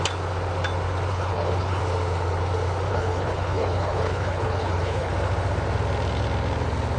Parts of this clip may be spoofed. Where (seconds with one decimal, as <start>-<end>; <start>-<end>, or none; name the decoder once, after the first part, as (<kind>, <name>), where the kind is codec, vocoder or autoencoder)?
1.1-1.8 (codec, HILCodec); 2.9-5.1